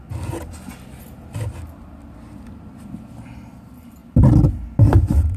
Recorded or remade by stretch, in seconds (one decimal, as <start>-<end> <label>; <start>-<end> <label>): 0.0-5.4 recorded